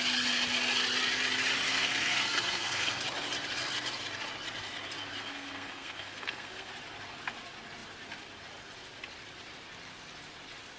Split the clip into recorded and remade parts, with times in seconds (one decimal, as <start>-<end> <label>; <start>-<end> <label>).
0.0-1.7 recorded; 1.7-3.0 remade; 3.0-5.2 recorded; 5.2-6.7 remade; 6.7-10.8 recorded